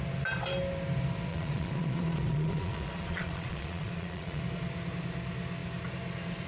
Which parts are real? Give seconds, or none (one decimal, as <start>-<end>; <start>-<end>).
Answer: 0.0-1.3; 4.4-6.5